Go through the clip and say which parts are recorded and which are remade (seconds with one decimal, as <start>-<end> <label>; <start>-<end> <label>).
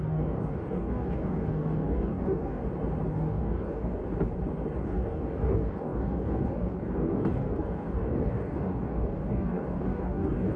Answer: 0.0-2.6 remade; 2.6-3.1 recorded; 3.1-4.0 remade; 4.0-4.8 recorded; 4.8-10.6 remade